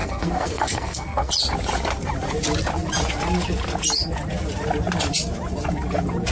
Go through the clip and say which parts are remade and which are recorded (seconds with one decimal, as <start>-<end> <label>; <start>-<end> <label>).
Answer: 0.0-1.3 remade; 1.3-6.3 recorded